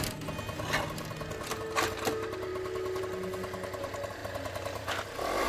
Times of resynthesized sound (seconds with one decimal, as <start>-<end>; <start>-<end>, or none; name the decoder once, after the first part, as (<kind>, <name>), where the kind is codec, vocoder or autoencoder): none

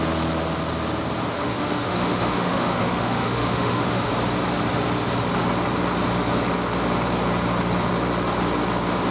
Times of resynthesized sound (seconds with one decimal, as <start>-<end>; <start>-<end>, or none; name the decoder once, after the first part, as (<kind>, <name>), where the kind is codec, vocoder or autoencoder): 1.3-4.1 (autoencoder, DAC-VAE)

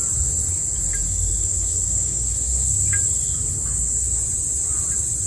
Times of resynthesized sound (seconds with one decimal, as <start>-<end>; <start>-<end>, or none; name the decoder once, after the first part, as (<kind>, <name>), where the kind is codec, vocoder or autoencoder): 1.5-2.9 (autoencoder, DAC-VAE)